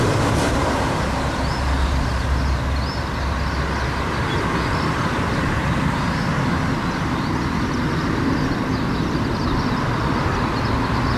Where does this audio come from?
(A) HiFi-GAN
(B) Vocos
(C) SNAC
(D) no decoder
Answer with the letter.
D